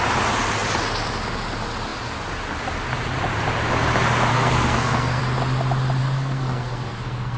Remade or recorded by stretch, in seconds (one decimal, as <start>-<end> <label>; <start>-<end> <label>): 0.0-4.3 recorded; 4.3-5.2 remade; 5.2-6.0 recorded; 6.0-7.4 remade